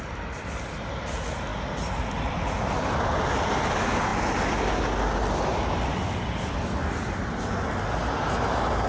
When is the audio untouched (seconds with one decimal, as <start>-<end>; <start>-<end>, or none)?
0.0-8.9